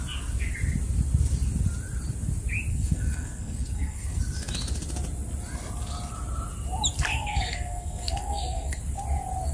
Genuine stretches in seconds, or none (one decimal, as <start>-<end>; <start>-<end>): 0.0-2.7; 4.2-7.1; 8.8-9.5